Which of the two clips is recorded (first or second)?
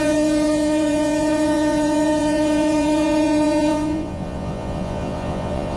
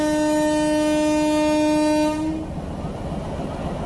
second